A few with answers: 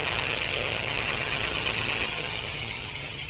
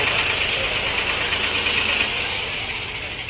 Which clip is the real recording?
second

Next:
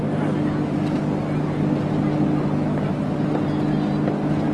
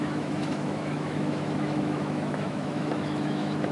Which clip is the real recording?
first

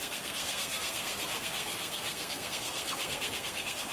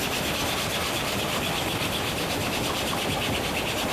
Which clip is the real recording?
second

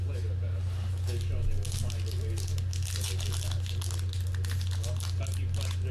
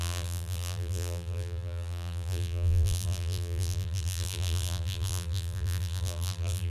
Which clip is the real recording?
first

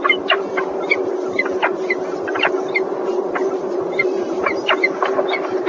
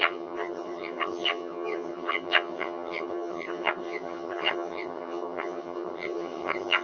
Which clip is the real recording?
first